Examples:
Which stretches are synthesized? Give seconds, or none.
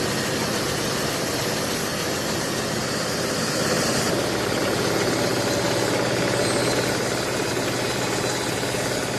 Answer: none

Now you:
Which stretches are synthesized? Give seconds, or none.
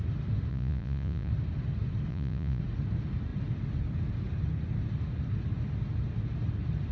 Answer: 0.5-1.3 (vocoder, Vocos); 2.1-2.6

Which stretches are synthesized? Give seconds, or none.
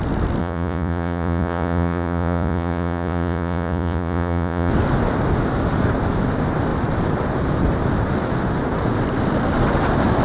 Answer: 0.4-4.7 (vocoder, Vocos)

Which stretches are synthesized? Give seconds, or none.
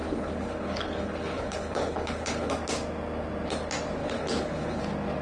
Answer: 0.0-2.5 (codec, HILCodec); 4.0-4.8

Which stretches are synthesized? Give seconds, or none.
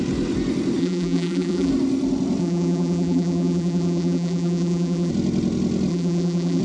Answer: 0.8-1.7 (vocoder, BigVGAN v2); 2.4-5.1; 5.9-6.6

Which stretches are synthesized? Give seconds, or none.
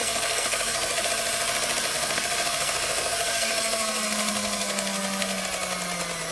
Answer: 0.0-1.1 (codec, SNAC); 1.9-5.4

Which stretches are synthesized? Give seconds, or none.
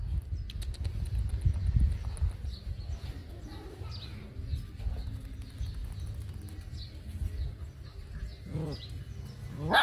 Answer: 3.2-3.9 (vocoder, BigVGAN v2)